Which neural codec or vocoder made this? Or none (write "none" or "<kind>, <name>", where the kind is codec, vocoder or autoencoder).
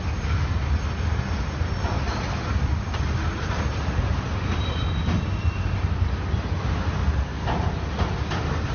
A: none